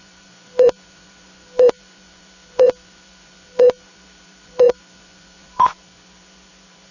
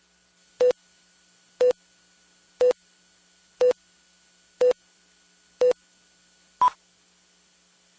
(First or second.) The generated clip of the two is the first